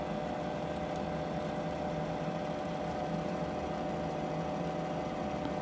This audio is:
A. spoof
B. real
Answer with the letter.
B